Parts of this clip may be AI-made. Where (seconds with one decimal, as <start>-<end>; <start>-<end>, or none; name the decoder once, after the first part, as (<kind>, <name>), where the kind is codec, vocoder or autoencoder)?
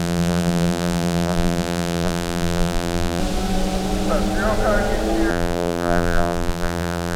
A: 0.0-3.2 (vocoder, BigVGAN v2); 5.3-7.2